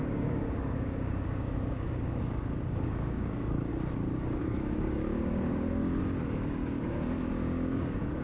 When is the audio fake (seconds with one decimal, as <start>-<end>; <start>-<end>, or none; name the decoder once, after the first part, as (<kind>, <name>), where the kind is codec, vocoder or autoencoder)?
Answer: 0.0-3.7 (codec, DAC); 4.4-5.9; 6.5-8.2